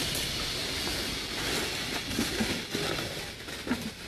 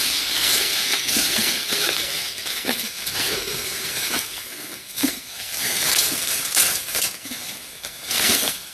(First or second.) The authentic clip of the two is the first